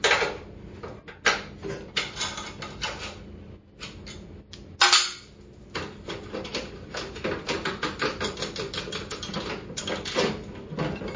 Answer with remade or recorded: recorded